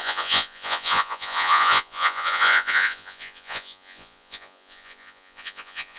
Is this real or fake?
fake